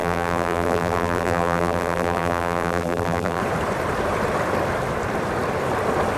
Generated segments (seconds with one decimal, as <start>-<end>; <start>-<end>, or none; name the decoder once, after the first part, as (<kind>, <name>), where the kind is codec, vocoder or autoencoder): 0.0-3.4 (vocoder, BigVGAN v2)